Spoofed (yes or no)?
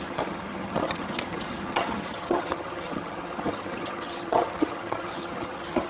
yes